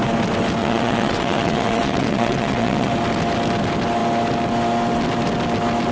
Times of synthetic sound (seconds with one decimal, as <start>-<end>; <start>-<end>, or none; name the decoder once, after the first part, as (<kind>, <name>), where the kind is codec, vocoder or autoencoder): 0.6-2.9 (vocoder, WaveNeXt)